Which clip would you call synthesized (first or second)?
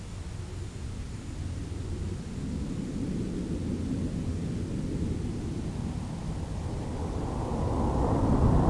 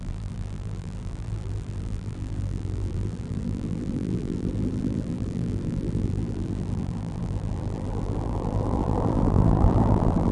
second